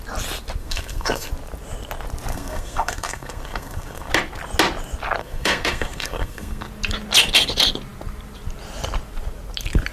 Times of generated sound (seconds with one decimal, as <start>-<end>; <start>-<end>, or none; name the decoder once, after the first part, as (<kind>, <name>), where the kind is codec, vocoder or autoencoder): 0.6-1.3 (codec, SNAC); 2.3-4.1; 5.2-6.7